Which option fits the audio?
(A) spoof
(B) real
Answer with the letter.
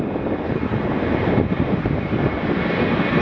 B